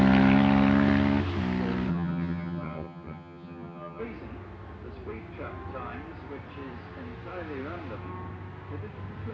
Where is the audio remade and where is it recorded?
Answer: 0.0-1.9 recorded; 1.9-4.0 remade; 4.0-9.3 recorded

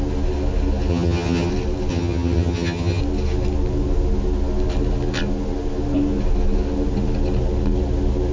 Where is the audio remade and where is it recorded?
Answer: 0.0-0.9 recorded; 0.9-1.5 remade; 1.5-1.9 recorded; 1.9-3.0 remade; 3.0-8.3 recorded